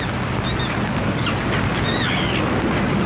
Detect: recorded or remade recorded